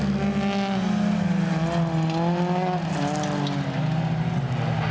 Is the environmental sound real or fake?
real